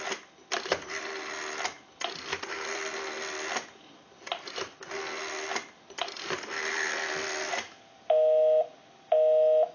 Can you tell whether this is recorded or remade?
recorded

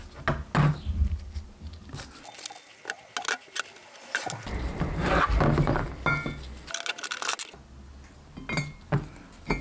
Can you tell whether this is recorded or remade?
recorded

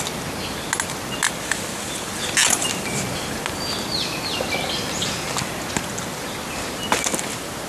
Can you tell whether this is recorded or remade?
recorded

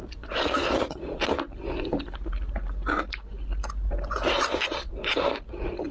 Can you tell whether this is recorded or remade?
recorded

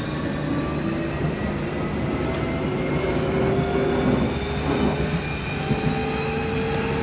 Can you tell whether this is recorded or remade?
recorded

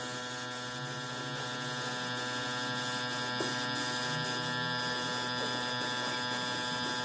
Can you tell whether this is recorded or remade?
recorded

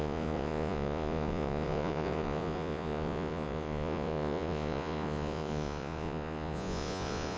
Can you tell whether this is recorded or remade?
remade